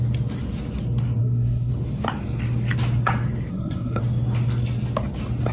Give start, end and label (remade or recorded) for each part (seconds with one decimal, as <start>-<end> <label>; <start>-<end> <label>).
0.0-1.2 recorded; 1.2-1.7 remade; 1.7-3.5 recorded; 3.5-4.0 remade; 4.0-5.5 recorded